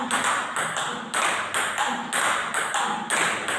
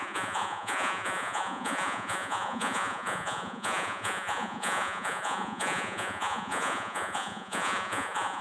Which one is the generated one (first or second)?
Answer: second